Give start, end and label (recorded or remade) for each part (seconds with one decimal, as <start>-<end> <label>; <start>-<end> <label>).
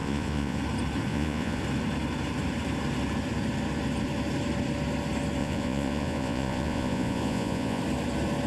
0.0-0.6 remade; 0.6-1.1 recorded; 1.1-1.6 remade; 1.6-5.4 recorded; 5.4-7.8 remade; 7.8-8.5 recorded